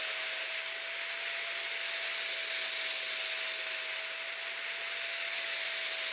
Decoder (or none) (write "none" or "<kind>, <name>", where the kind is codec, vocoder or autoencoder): none